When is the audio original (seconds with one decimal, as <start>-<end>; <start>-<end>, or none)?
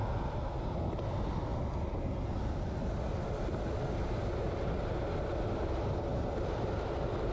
0.0-6.1